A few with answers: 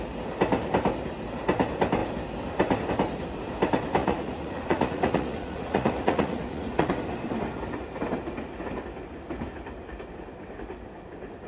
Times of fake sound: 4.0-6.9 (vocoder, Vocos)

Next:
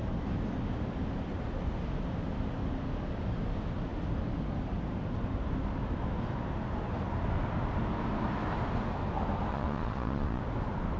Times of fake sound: 9.5-10.4 (vocoder, Vocos)

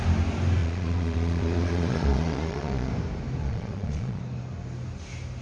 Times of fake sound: 0.6-2.9 (vocoder, Vocos); 3.4-4.2

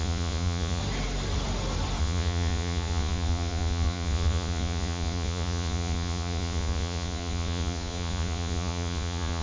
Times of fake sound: 0.0-0.8 (vocoder, Vocos); 2.0-9.4

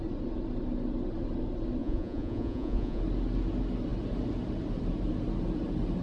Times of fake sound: 1.8-3.0 (vocoder, Vocos)